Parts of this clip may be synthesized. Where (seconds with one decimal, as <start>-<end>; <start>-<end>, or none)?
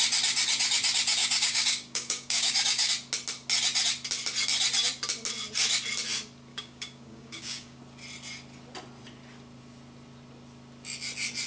1.2-2.9; 6.5-7.8